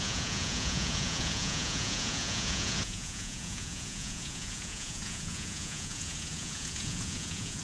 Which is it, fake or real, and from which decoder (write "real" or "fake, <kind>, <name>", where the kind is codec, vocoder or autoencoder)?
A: fake, vocoder, Vocos